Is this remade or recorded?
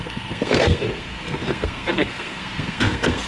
remade